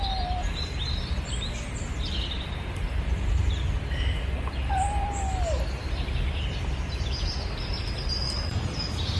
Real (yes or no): yes